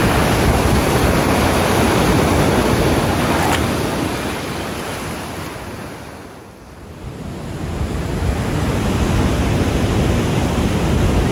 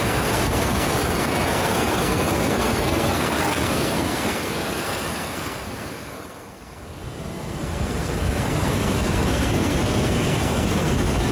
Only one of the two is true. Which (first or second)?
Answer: first